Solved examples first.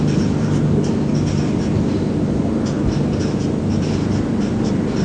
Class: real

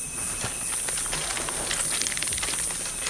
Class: real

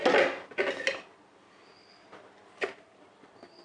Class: real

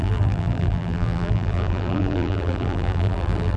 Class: fake